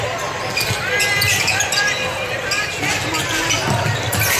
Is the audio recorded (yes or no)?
yes